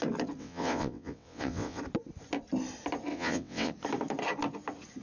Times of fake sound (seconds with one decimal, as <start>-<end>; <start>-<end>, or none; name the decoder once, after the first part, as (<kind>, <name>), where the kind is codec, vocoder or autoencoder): 0.4-1.8 (vocoder, WaveNeXt); 3.1-3.7